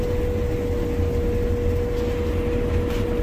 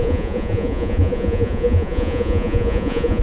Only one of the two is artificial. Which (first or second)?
second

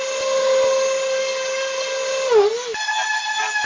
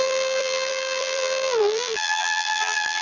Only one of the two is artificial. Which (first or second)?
second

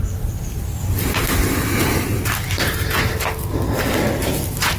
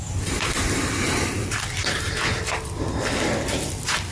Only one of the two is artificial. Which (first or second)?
second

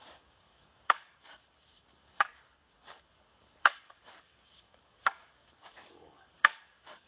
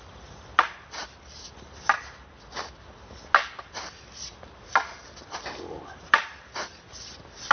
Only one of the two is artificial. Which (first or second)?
first